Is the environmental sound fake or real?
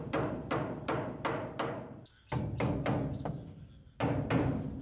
real